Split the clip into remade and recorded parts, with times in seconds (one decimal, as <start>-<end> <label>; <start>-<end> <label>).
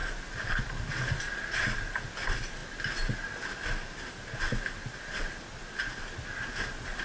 0.0-0.6 recorded; 0.6-2.6 remade; 2.6-7.0 recorded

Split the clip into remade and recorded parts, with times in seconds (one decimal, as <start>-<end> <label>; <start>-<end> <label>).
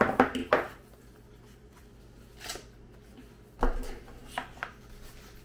0.0-0.4 recorded; 0.4-2.0 remade; 2.0-4.2 recorded; 4.2-4.8 remade; 4.8-5.4 recorded